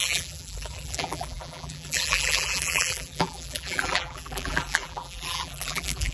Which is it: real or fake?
fake